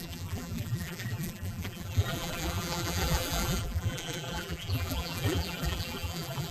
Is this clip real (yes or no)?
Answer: no